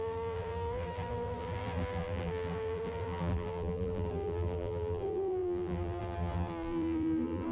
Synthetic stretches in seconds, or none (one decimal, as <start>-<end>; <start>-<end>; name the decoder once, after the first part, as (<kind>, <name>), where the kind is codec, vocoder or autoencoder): 0.0-7.5 (vocoder, BigVGAN v2)

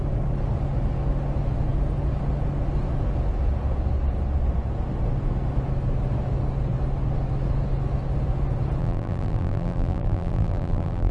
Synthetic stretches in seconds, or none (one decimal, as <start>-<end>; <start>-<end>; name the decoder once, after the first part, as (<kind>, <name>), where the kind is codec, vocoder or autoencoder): 8.8-11.1 (vocoder, BigVGAN v2)

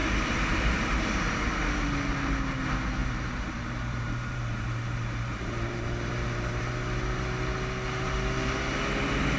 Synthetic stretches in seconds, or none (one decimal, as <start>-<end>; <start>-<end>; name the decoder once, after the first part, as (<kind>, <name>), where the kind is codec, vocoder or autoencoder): 0.0-1.8 (vocoder, BigVGAN v2); 3.0-6.6

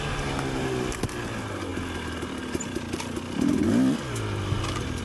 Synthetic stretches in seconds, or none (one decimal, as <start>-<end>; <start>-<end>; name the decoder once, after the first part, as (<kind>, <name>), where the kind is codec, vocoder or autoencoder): none

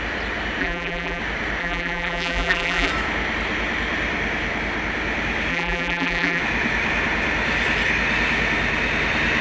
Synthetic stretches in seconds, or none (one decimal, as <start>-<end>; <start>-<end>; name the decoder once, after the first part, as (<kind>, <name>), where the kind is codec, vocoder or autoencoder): 0.6-1.2 (vocoder, BigVGAN v2); 1.6-2.9; 5.5-6.4

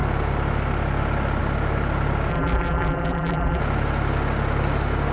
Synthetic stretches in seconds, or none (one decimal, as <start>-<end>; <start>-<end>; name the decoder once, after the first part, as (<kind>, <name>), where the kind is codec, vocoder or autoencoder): 2.3-3.6 (vocoder, BigVGAN v2)